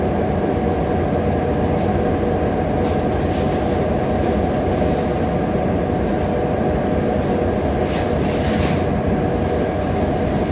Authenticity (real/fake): real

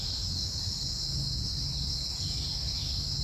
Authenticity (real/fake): real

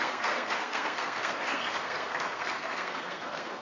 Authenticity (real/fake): fake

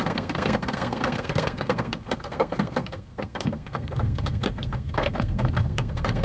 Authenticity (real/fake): fake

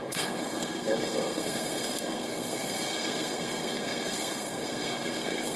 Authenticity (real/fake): fake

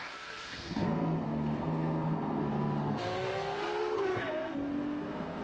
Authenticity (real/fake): fake